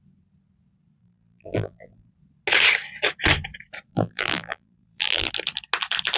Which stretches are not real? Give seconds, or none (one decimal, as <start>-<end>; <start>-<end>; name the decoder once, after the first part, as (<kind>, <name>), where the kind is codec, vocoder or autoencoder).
1.0-2.1 (vocoder, BigVGAN v2); 3.9-5.3